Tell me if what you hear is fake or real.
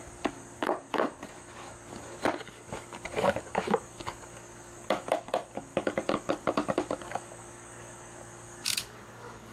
fake